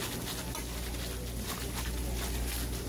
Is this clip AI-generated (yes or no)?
no